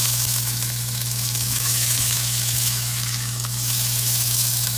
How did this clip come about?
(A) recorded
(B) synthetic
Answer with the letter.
B